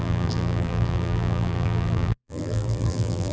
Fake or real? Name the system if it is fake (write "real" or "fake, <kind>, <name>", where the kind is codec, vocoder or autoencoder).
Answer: fake, vocoder, BigVGAN v2